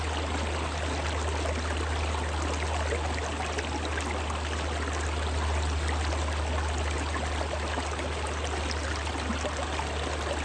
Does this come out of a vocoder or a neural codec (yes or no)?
no